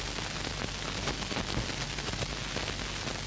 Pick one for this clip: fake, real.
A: real